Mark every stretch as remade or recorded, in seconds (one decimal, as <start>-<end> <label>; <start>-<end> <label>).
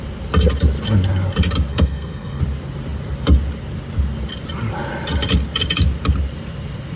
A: 0.0-1.7 recorded; 1.7-2.4 remade; 2.4-7.0 recorded